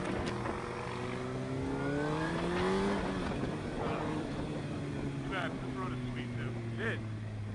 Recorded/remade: recorded